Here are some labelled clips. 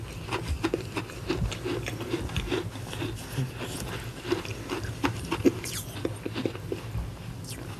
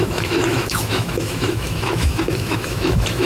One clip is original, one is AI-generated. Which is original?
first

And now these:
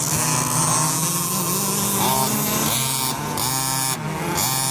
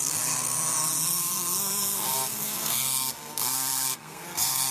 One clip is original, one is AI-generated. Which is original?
first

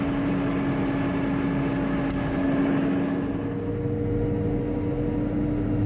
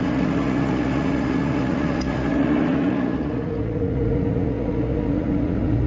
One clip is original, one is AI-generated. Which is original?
first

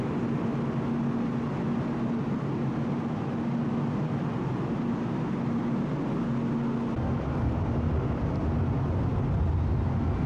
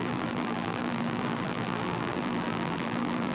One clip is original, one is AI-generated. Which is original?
first